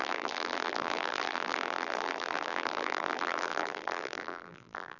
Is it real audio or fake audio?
fake